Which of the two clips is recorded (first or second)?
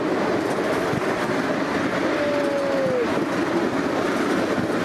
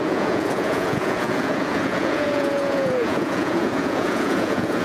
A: first